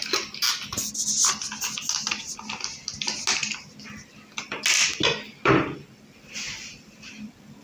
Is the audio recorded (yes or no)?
yes